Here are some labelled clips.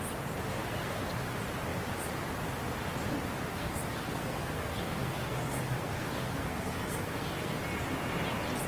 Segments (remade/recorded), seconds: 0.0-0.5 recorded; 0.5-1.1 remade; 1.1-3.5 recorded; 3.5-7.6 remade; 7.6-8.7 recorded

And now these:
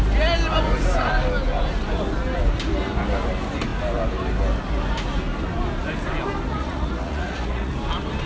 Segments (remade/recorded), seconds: 0.0-6.5 recorded; 6.5-7.7 remade; 7.7-8.3 recorded